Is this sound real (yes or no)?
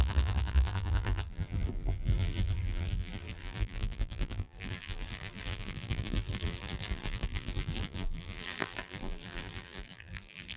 no